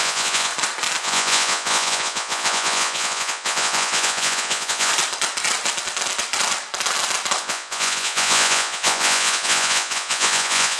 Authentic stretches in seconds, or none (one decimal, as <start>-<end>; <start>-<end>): 0.5-1.0; 4.9-7.4